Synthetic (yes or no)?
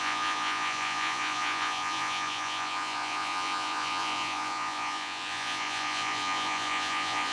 yes